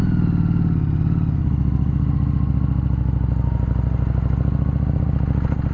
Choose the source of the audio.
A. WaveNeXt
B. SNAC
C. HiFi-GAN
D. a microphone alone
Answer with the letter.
D